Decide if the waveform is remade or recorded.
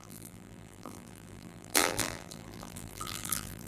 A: remade